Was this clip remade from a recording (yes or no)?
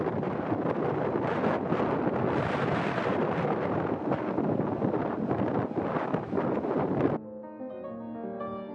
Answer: no